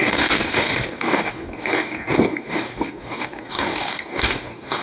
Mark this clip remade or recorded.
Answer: remade